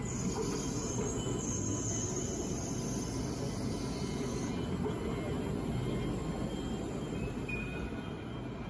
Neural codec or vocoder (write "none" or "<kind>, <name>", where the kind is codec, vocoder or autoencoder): none